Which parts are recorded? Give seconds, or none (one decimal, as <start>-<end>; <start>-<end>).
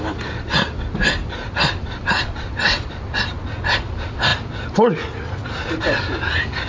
0.0-6.7